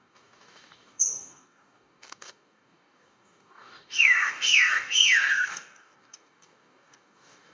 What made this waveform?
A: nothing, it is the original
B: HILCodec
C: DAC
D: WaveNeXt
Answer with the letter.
C